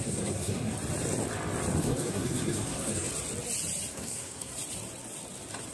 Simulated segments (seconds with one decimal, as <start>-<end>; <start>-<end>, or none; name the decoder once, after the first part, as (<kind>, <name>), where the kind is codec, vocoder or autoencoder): 0.0-0.7 (codec, SNAC); 1.8-3.1; 3.9-4.5